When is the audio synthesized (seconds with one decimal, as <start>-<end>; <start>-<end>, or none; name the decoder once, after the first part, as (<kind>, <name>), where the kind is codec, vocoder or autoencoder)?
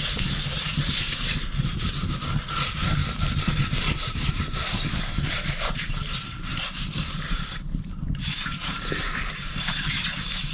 0.0-3.0 (vocoder, BigVGAN v2); 3.6-10.5